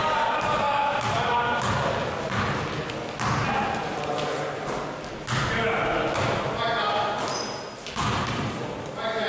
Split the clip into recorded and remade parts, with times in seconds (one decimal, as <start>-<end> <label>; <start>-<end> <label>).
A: 0.0-9.3 recorded

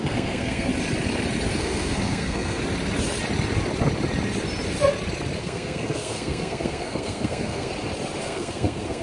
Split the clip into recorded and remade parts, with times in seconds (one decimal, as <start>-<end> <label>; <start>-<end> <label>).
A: 0.0-0.7 remade; 0.7-1.5 recorded; 1.5-2.6 remade; 2.6-5.4 recorded; 5.4-7.7 remade; 7.7-8.2 recorded; 8.2-9.0 remade

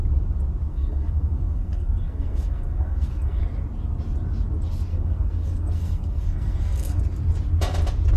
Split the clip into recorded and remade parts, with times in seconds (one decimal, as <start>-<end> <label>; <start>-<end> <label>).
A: 0.0-0.7 recorded; 0.7-3.4 remade; 3.4-4.9 recorded; 4.9-7.0 remade; 7.0-8.2 recorded

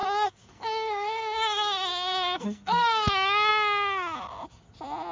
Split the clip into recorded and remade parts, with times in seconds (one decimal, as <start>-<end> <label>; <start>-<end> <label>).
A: 0.0-3.1 remade; 3.1-5.1 recorded

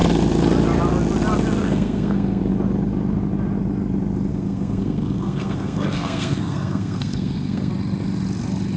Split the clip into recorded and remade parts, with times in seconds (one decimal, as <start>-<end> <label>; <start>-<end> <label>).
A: 0.0-1.6 recorded; 1.6-2.4 remade; 2.4-4.3 recorded; 4.3-7.7 remade; 7.7-8.8 recorded

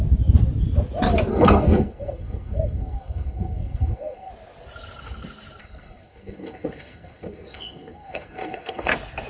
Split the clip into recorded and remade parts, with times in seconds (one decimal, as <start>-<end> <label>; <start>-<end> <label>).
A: 0.0-1.3 recorded; 1.3-4.3 remade; 4.3-5.6 recorded; 5.6-8.9 remade; 8.9-9.3 recorded